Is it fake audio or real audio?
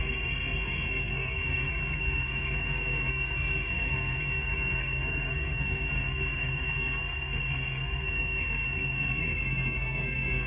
fake